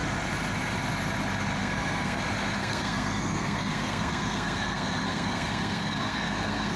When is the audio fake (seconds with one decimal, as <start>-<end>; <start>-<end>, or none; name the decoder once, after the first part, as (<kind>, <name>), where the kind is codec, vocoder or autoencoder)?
1.6-2.2 (codec, SNAC); 2.6-6.8

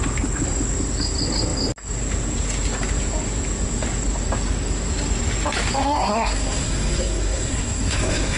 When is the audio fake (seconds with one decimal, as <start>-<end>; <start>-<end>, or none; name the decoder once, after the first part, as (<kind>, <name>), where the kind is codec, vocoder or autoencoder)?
5.8-8.4 (codec, SNAC)

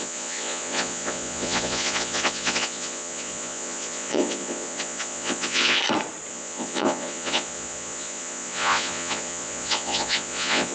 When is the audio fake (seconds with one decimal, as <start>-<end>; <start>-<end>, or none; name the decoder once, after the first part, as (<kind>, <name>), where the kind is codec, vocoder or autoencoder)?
0.0-5.8 (vocoder, Vocos); 6.3-10.7

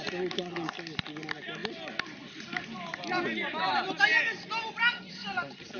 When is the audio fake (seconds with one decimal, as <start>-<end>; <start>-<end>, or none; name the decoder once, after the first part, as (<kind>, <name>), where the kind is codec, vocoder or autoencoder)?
none